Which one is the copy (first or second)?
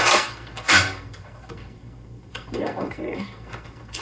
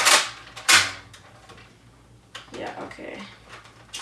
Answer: first